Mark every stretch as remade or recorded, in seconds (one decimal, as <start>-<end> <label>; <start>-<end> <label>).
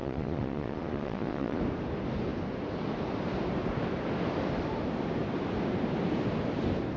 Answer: 0.0-1.6 remade; 1.6-7.0 recorded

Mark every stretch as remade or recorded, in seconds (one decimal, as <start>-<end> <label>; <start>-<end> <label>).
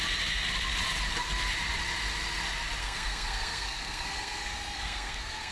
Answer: 0.0-2.8 recorded; 2.8-5.5 remade